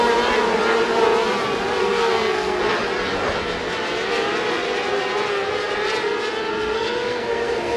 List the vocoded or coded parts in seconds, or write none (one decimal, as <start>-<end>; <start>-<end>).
1.8-2.6; 6.5-7.8